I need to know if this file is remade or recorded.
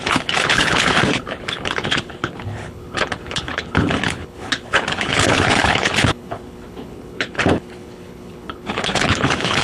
remade